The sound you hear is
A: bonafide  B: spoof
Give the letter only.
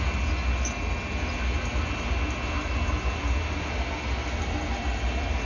A